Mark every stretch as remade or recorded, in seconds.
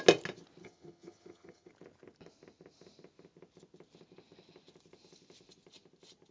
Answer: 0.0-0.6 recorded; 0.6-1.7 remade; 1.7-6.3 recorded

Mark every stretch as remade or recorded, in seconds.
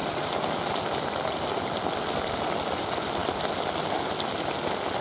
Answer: 0.0-5.0 recorded